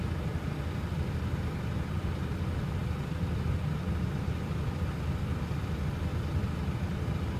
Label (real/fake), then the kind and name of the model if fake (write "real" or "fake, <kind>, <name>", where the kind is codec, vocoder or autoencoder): real